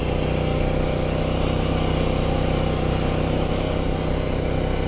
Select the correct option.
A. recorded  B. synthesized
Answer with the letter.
A